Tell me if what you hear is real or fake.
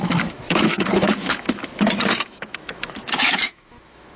fake